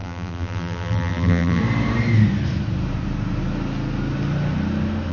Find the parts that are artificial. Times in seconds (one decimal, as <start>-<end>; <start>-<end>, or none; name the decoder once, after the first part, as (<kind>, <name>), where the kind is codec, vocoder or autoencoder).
0.0-1.6 (vocoder, BigVGAN v2)